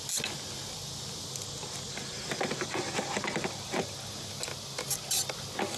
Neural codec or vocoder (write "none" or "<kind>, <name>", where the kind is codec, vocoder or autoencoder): none